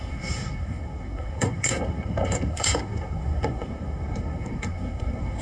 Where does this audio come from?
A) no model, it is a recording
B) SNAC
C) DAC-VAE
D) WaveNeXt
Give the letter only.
B